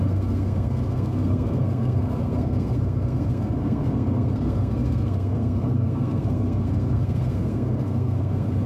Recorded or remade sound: remade